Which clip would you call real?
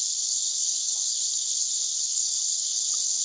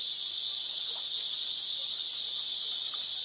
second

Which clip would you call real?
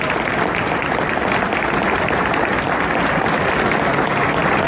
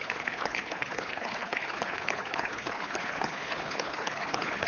first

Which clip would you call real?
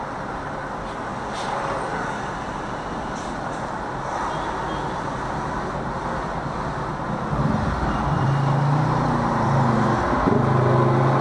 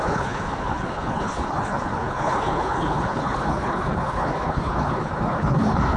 first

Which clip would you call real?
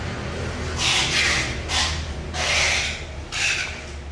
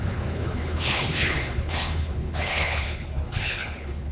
first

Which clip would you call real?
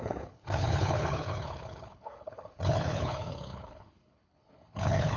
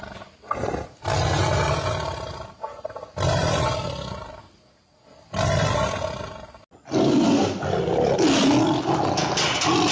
second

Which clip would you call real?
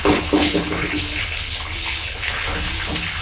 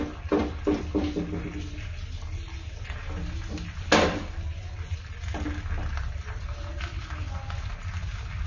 second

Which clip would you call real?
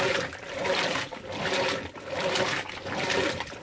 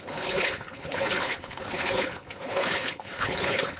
first